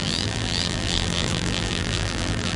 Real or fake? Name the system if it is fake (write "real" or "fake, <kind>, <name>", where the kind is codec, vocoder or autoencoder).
fake, vocoder, BigVGAN v2